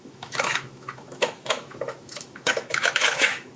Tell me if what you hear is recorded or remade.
remade